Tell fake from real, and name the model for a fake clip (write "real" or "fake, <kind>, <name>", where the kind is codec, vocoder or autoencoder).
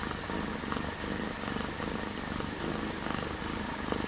real